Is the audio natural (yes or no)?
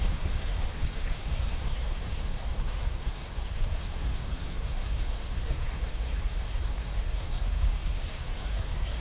no